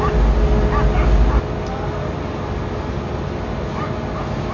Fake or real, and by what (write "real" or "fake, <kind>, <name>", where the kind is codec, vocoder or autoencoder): real